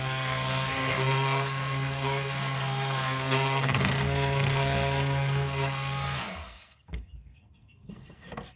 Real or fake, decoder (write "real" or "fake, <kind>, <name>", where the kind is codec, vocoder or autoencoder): fake, codec, SNAC